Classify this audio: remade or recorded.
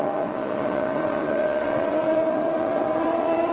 remade